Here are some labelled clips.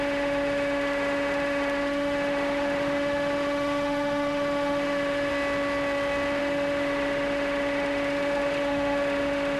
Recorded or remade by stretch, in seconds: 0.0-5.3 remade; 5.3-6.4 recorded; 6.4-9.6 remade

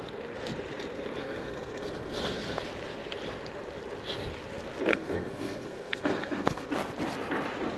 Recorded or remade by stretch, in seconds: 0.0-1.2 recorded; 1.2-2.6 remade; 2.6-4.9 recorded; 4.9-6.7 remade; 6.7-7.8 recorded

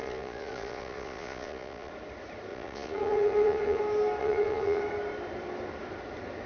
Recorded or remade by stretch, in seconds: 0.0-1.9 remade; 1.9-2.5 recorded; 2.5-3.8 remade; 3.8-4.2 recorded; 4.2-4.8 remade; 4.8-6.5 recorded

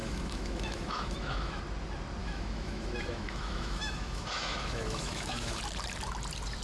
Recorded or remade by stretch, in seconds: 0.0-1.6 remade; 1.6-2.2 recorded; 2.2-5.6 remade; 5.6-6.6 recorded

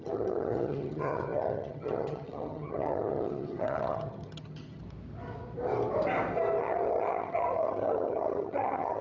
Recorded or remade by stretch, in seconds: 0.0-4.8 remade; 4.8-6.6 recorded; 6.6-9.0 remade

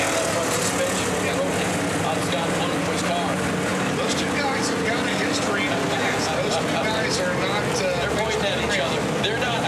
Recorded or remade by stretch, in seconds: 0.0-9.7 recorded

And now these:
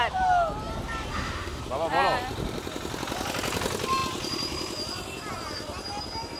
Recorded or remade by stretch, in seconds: 0.0-1.1 recorded; 1.1-1.6 remade; 1.6-6.4 recorded

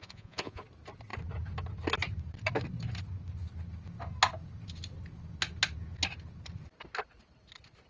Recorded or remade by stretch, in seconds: 0.0-0.6 remade; 0.6-7.9 recorded